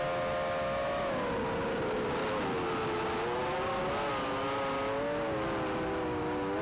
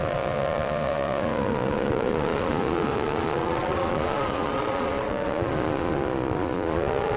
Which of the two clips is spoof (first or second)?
second